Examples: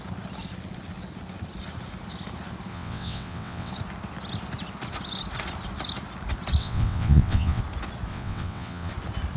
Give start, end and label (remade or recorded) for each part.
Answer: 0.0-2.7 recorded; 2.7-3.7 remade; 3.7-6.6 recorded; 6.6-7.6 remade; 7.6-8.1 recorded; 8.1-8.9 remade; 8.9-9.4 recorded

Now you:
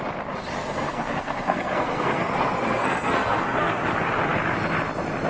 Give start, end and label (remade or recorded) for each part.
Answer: 0.0-0.6 recorded; 0.6-3.8 remade; 3.8-5.3 recorded

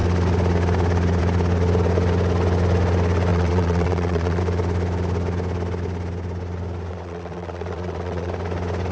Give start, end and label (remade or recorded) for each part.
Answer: 0.0-3.3 recorded; 3.3-4.4 remade; 4.4-6.9 recorded; 6.9-8.3 remade; 8.3-8.9 recorded

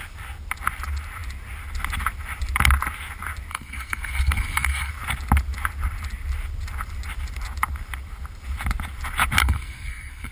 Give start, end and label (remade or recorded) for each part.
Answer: 0.0-3.5 recorded; 3.5-4.9 remade; 4.9-9.4 recorded; 9.4-10.3 remade

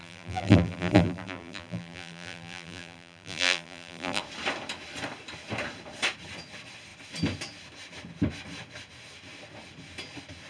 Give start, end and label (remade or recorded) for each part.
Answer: 0.0-4.2 remade; 4.2-10.5 recorded